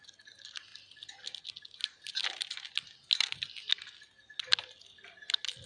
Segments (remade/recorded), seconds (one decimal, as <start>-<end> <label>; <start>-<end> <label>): 0.0-5.7 recorded